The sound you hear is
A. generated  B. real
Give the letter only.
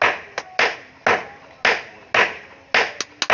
B